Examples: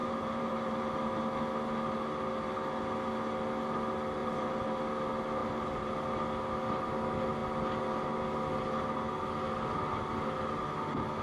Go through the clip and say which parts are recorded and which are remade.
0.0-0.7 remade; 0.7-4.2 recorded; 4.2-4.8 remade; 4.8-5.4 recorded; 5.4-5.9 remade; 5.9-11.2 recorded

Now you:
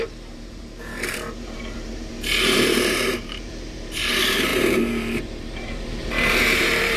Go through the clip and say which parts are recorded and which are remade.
0.0-7.0 remade